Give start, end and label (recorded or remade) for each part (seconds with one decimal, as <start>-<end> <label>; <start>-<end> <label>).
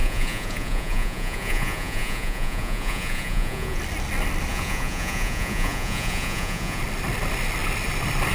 0.0-3.8 remade; 3.8-4.5 recorded; 4.5-6.8 remade; 6.8-8.3 recorded